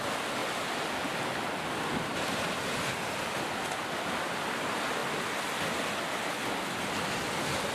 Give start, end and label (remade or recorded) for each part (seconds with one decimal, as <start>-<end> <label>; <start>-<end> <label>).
0.0-7.7 recorded